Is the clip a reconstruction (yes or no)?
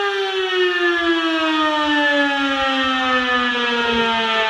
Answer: no